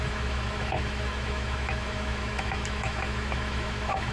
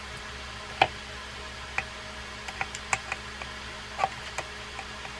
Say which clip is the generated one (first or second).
first